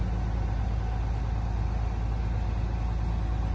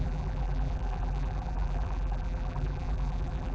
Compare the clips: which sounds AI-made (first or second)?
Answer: second